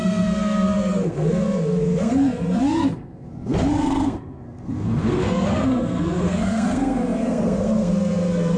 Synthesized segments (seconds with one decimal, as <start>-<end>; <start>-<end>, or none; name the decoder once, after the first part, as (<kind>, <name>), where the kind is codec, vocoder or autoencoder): 0.0-8.6 (codec, SNAC)